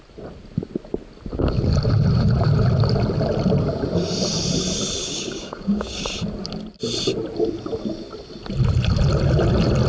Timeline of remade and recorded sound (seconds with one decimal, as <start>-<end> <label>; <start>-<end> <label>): 0.0-5.0 recorded; 5.0-6.1 remade; 6.1-9.9 recorded